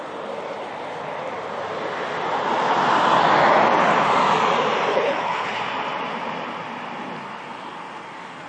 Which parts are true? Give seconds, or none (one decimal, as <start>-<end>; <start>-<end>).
0.0-4.9; 5.6-8.5